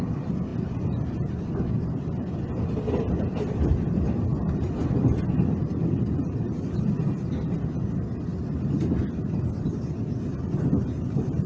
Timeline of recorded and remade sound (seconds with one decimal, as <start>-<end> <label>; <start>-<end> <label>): 0.0-11.5 recorded